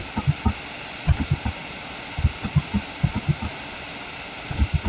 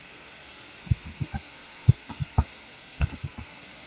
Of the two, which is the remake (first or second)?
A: second